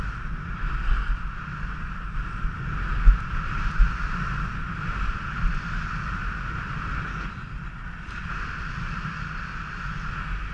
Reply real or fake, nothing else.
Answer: real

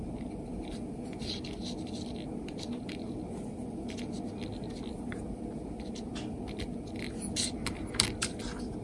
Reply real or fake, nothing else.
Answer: real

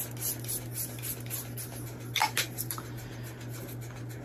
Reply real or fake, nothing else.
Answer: real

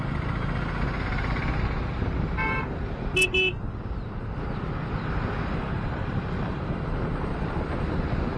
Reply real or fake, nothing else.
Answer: real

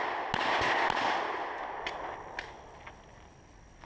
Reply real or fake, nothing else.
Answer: real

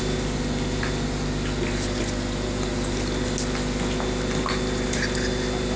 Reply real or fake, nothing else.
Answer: real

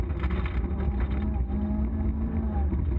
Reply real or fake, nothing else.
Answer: real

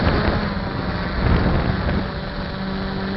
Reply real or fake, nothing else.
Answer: real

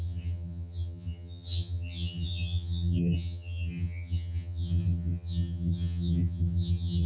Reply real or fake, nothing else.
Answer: fake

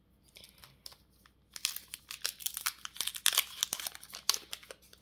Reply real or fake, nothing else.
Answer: real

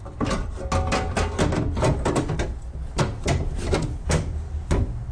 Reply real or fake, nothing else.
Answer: real